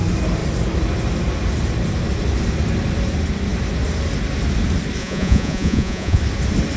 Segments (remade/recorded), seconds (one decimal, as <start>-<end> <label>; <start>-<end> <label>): 0.0-5.0 recorded; 5.0-6.2 remade; 6.2-6.8 recorded